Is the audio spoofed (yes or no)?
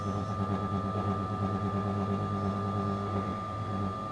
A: no